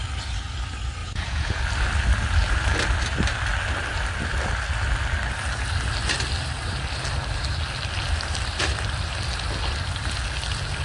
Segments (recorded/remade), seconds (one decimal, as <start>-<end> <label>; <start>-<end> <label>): 0.0-1.0 recorded; 1.0-1.6 remade; 1.6-10.8 recorded